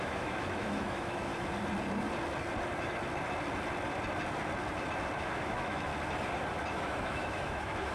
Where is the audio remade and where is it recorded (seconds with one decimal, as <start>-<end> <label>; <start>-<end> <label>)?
0.0-1.3 remade; 1.3-5.2 recorded; 5.2-5.9 remade; 5.9-6.7 recorded; 6.7-7.9 remade